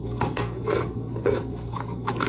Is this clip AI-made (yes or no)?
yes